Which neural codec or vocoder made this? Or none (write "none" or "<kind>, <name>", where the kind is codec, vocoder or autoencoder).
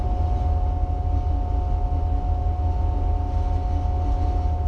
none